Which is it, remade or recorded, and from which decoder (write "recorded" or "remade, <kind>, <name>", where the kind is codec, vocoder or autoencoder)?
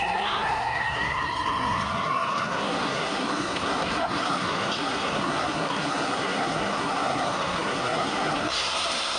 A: remade, codec, SNAC